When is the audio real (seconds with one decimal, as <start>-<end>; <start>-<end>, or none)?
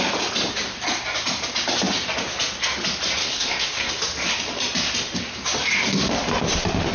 0.0-3.2; 3.9-6.9